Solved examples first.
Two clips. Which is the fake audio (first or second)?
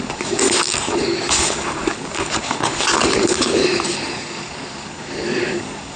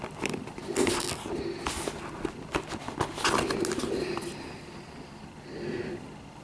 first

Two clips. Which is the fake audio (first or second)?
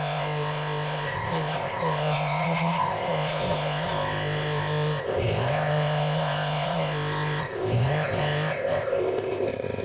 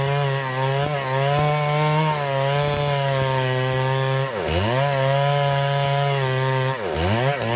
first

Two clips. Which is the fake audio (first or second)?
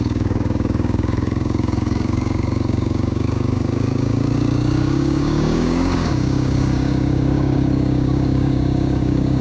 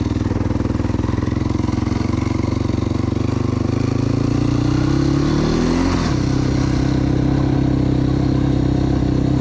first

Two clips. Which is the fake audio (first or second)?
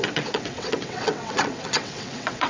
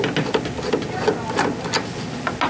first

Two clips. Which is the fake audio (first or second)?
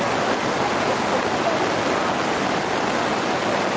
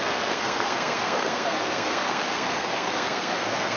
second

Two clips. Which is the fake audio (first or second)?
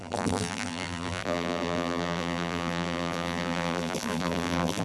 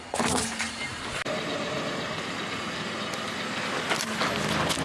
first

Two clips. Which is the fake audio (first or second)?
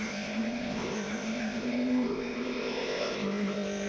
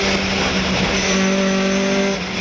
first